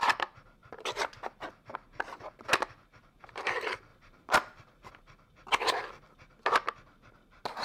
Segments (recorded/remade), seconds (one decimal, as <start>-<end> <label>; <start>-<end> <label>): 0.0-3.9 recorded; 3.9-4.9 remade; 4.9-7.6 recorded